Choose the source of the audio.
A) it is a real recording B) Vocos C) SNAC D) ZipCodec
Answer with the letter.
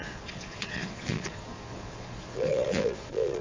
B